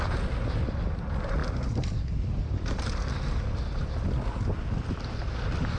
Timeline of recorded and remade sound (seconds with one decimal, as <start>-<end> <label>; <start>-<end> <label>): 0.0-5.8 recorded